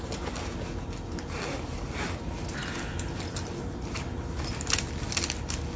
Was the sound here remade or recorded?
recorded